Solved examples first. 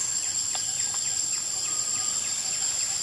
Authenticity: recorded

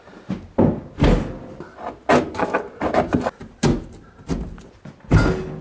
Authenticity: recorded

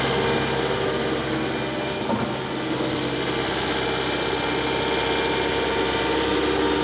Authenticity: recorded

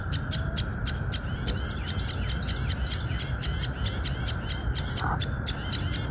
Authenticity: recorded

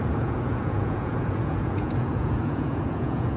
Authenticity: remade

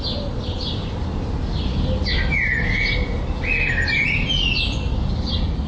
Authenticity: recorded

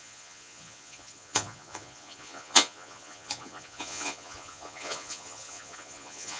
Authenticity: remade